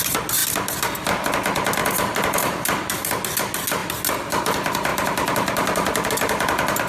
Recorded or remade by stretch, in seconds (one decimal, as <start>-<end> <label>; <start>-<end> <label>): 0.0-0.4 recorded; 0.4-1.0 remade; 1.0-1.8 recorded; 1.8-3.4 remade; 3.4-6.9 recorded